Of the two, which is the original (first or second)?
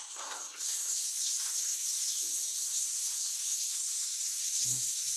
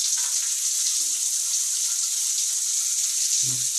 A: second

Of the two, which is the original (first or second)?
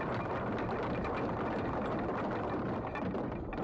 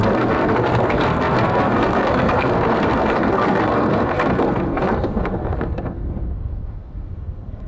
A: first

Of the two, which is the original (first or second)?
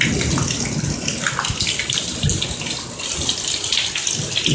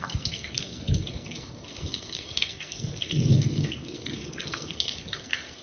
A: first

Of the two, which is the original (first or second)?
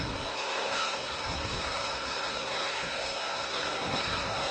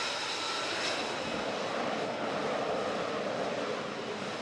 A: second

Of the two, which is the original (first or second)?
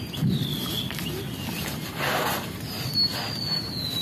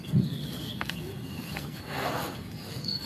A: first